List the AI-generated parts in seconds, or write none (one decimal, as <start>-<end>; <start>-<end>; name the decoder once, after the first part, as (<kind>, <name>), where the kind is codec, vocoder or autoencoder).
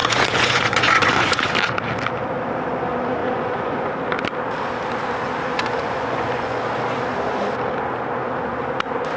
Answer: 0.0-1.5 (vocoder, Vocos); 3.2-3.9; 5.5-6.6